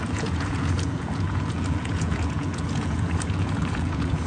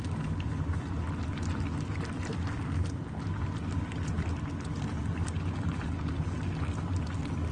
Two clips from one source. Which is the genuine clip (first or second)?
second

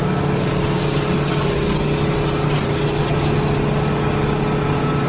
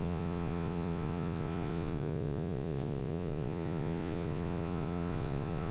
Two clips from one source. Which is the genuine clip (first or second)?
first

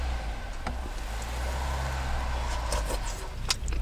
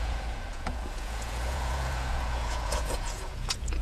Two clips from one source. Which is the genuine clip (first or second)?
first